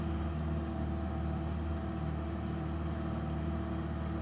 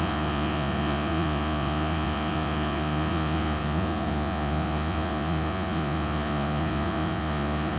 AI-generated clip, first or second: second